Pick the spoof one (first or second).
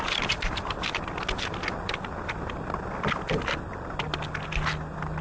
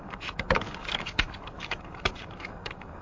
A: second